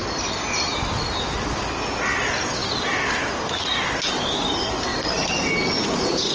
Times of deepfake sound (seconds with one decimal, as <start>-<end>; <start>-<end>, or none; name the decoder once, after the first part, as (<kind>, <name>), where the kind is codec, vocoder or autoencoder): 0.0-0.7 (vocoder, BigVGAN v2); 2.6-3.2; 4.9-5.5